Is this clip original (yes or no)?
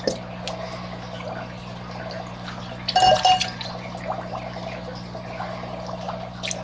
yes